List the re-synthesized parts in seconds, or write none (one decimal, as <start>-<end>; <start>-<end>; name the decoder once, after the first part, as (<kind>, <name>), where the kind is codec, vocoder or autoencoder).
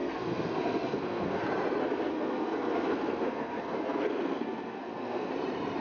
0.0-1.4 (codec, SNAC); 1.8-5.3